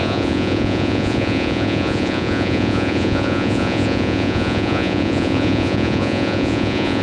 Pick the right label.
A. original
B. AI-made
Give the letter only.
B